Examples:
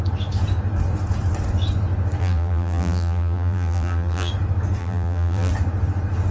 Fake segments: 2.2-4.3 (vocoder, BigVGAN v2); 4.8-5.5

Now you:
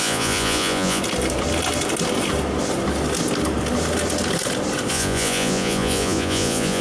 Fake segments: 0.0-1.0 (vocoder, Vocos); 4.9-6.8

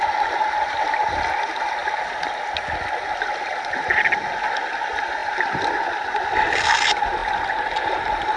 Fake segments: none

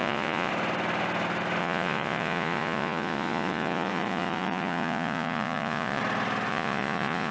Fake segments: 0.0-0.5 (vocoder, Vocos); 1.6-6.0; 6.5-7.3

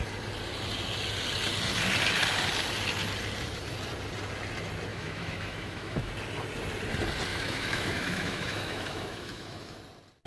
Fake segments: 4.9-6.1 (autoencoder, DAC-VAE); 7.3-9.8

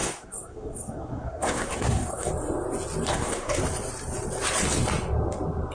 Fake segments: 0.0-2.3 (codec, SNAC); 3.1-3.6

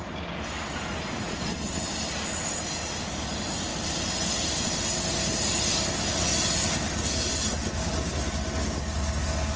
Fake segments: none

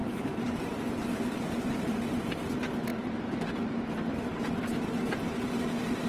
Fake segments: 0.0-2.2 (vocoder, BigVGAN v2); 2.9-4.5